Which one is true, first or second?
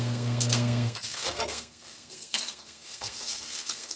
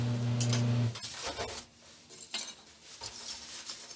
second